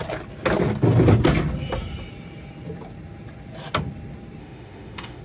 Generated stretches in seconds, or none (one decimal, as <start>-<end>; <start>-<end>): 4.4-5.2